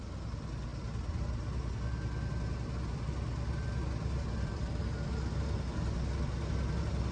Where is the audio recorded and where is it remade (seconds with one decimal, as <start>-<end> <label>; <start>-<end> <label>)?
0.0-7.1 recorded